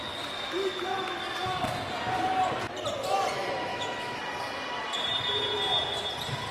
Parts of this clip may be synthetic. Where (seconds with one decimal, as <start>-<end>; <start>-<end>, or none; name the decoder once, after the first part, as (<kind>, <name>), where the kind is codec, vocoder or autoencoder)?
3.7-4.2 (autoencoder, DAC-VAE)